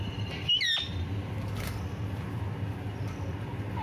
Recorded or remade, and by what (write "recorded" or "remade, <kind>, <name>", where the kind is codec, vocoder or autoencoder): recorded